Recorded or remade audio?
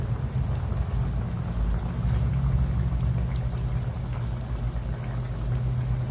recorded